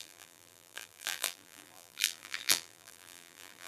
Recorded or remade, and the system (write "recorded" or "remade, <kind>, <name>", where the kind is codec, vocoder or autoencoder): remade, vocoder, BigVGAN v2